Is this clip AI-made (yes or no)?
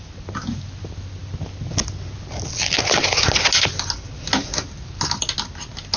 no